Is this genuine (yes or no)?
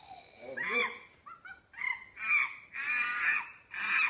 yes